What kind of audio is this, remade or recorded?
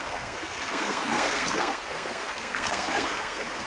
remade